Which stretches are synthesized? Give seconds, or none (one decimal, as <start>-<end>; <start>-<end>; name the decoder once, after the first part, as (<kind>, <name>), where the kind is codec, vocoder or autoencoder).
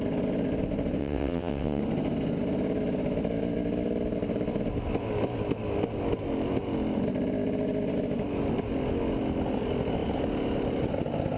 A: 1.0-1.8 (vocoder, WaveNeXt)